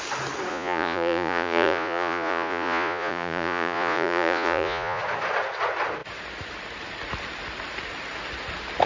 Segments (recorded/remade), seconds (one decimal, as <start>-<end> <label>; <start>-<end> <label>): 0.0-0.5 recorded; 0.5-5.0 remade; 5.0-8.9 recorded